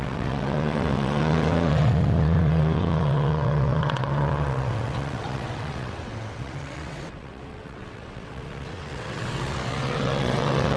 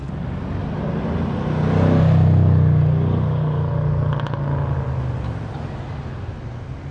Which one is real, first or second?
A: second